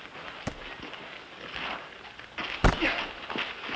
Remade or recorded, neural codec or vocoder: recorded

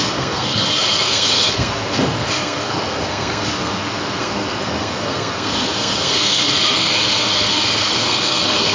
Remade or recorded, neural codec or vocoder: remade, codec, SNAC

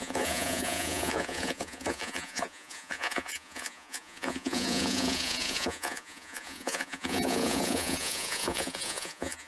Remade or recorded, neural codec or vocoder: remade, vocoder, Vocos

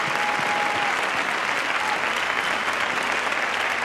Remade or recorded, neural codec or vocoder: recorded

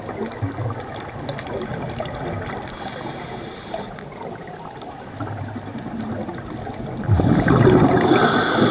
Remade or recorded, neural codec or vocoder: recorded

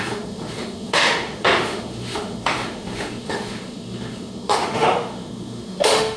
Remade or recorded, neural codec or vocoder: remade, autoencoder, DAC-VAE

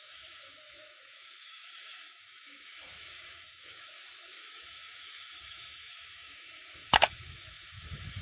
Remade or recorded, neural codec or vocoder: remade, autoencoder, DAC-VAE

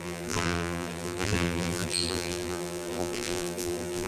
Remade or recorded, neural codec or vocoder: remade, vocoder, BigVGAN v2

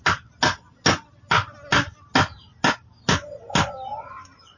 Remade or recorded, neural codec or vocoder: recorded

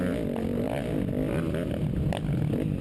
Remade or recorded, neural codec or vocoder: recorded